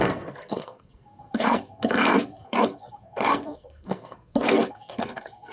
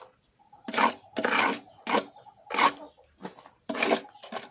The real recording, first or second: second